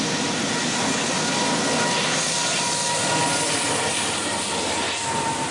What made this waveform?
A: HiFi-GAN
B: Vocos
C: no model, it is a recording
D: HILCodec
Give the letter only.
C